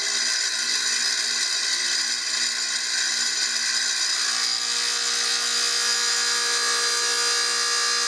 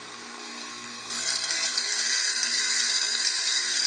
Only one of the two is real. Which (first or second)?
first